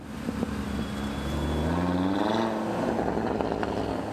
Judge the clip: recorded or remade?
recorded